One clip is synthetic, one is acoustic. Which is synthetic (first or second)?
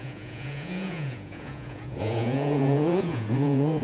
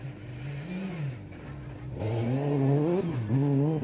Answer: first